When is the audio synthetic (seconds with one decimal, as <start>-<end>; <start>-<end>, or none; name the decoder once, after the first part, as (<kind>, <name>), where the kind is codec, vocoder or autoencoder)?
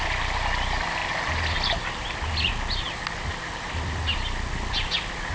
none